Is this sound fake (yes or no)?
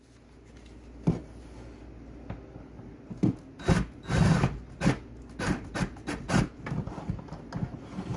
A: no